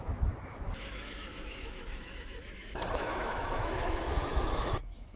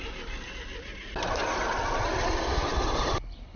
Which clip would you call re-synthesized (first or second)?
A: first